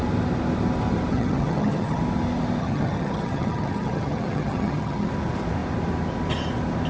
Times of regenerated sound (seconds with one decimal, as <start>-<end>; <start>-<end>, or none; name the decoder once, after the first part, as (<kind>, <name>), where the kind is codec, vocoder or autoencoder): 1.1-2.0 (vocoder, HiFi-GAN); 2.6-5.1